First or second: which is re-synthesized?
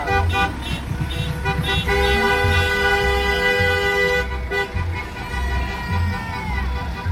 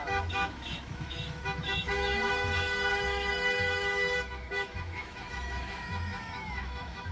second